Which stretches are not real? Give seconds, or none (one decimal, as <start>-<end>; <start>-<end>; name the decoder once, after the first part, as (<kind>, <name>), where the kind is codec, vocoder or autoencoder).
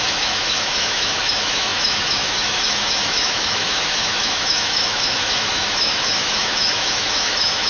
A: 0.0-7.7 (autoencoder, DAC-VAE)